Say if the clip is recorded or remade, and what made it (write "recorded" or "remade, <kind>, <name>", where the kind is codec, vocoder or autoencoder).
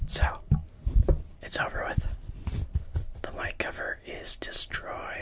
recorded